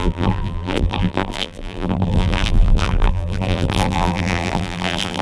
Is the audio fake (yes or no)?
yes